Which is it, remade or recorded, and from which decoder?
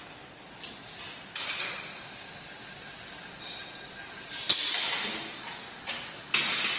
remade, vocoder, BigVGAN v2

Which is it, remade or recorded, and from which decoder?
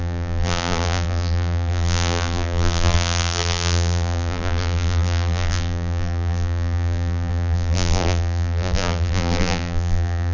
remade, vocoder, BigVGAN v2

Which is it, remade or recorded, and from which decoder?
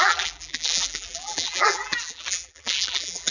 remade, vocoder, BigVGAN v2